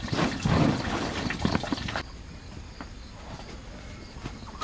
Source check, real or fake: fake